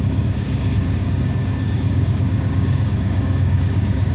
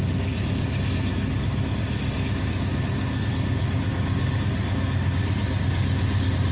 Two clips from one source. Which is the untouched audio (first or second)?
second